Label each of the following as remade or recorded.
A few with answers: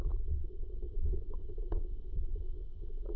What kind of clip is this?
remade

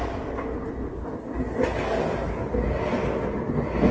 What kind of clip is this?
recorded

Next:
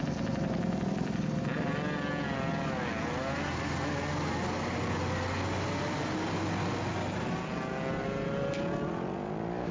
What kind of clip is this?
recorded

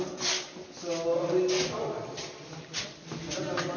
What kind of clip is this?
recorded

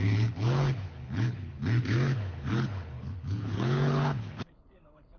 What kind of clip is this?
remade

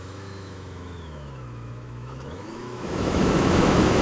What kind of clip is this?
remade